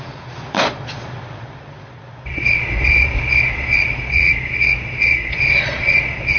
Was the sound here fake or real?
fake